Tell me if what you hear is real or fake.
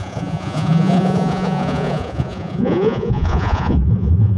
fake